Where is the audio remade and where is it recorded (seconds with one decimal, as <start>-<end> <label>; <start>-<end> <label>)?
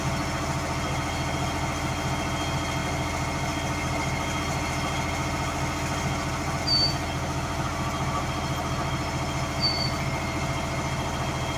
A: 0.0-11.6 recorded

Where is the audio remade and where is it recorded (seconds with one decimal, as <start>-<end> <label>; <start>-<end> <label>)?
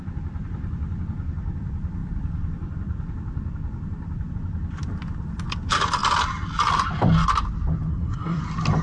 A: 0.0-7.9 recorded; 7.9-8.4 remade; 8.4-8.8 recorded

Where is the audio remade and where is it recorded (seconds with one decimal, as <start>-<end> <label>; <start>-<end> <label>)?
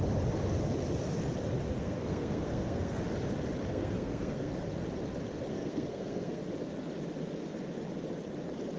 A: 0.0-1.8 recorded; 1.8-3.0 remade; 3.0-3.7 recorded; 3.7-4.5 remade; 4.5-5.5 recorded; 5.5-6.4 remade; 6.4-8.8 recorded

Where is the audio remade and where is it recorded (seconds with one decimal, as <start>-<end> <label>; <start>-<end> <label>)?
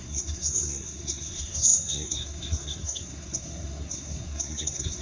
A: 0.0-5.0 remade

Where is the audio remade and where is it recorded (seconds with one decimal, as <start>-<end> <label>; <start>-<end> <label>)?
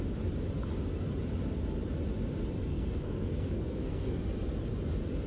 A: 0.0-2.7 recorded; 2.7-4.2 remade; 4.2-5.3 recorded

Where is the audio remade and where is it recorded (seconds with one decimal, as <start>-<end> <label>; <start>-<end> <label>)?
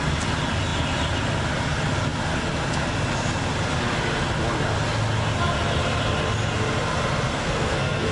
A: 0.0-7.3 recorded; 7.3-8.1 remade